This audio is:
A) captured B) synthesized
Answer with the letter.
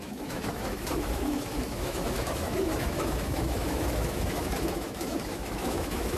B